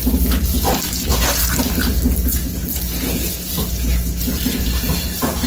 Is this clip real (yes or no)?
yes